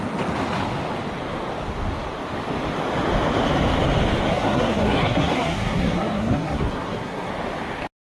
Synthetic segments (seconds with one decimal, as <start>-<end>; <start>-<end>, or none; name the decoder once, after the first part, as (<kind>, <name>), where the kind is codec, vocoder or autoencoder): 4.3-7.3 (codec, SNAC)